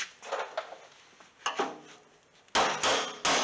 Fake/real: real